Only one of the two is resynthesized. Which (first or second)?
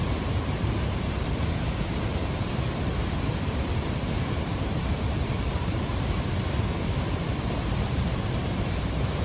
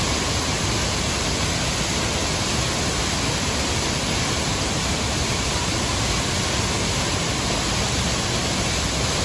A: first